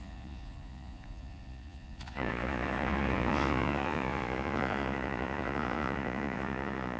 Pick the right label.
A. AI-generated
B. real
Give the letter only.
A